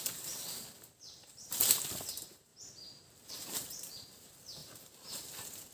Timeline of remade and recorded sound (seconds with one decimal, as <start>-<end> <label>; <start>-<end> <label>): 0.0-2.5 remade; 2.5-3.3 recorded; 3.3-5.7 remade